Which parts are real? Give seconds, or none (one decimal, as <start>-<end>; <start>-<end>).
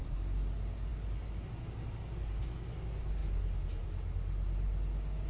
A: 0.0-5.3